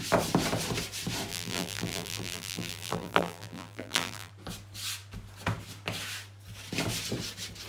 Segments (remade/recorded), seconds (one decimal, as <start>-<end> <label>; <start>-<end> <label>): 0.0-1.3 recorded; 1.3-4.3 remade; 4.3-7.7 recorded